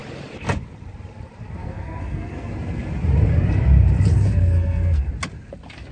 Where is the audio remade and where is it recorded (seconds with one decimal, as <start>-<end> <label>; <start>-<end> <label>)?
0.0-1.6 recorded; 1.6-2.5 remade; 2.5-4.1 recorded; 4.1-5.1 remade; 5.1-5.9 recorded